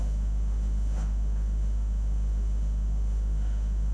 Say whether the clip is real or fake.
fake